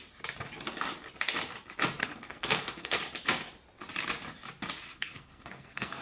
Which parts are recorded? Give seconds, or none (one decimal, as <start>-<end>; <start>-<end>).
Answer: 0.0-2.0; 3.0-4.9